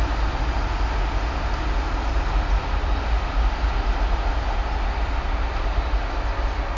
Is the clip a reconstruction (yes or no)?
no